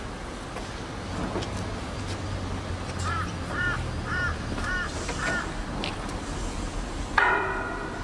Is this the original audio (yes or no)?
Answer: yes